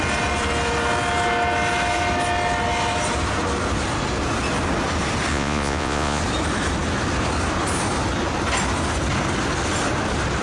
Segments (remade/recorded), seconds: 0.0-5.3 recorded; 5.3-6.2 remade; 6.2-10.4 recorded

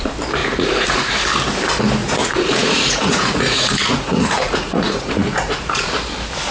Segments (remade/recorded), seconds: 0.0-0.4 recorded; 0.4-1.1 remade; 1.1-2.0 recorded; 2.0-5.9 remade; 5.9-6.5 recorded